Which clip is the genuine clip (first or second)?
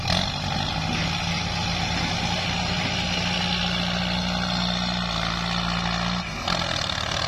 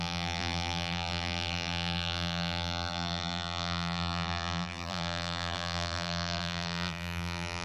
first